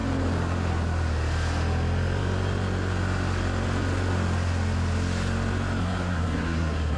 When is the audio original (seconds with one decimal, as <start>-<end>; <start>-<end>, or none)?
0.0-5.8